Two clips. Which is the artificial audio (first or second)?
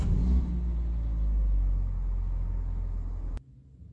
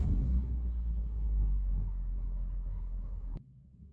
second